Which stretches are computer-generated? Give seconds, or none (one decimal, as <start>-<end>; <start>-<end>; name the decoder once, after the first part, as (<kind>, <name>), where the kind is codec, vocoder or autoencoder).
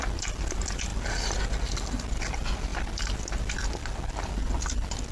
none